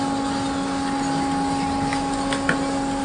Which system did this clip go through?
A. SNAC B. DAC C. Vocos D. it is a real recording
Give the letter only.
D